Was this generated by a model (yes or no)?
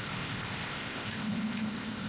yes